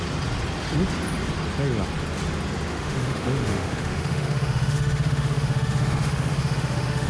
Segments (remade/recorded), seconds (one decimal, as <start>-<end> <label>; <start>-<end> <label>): 0.0-2.7 recorded; 2.7-7.1 remade